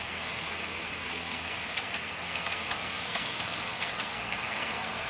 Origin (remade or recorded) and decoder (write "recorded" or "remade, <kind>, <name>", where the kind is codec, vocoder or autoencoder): remade, codec, SNAC